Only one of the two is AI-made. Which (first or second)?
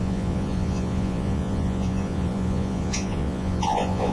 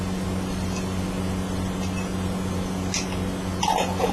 first